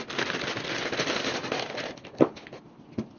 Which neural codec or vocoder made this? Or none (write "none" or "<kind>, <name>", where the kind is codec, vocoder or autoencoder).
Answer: none